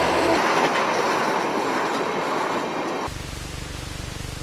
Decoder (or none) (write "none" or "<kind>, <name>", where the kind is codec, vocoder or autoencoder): none